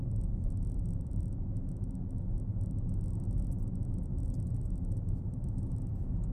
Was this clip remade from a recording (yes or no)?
no